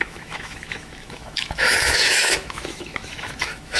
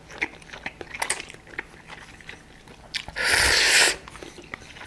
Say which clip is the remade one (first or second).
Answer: first